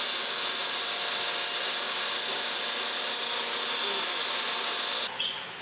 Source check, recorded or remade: recorded